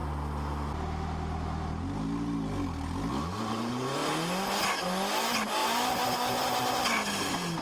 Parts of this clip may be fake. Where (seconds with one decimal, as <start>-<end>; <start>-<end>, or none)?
5.6-6.7